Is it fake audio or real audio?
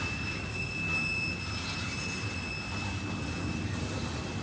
real